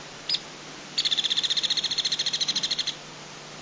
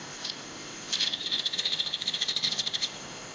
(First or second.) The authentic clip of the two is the first